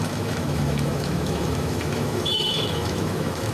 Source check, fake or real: fake